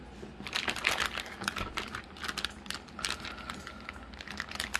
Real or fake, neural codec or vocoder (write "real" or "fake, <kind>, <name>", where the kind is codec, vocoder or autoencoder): real